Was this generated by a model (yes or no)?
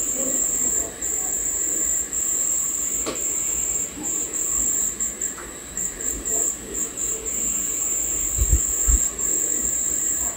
yes